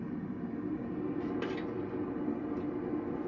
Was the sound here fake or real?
real